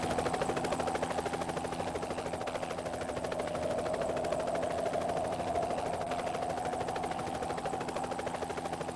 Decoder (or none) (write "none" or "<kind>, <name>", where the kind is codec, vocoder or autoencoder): none